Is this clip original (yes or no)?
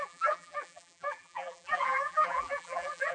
no